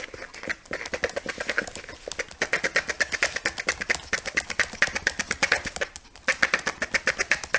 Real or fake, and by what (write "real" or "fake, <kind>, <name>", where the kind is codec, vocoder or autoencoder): real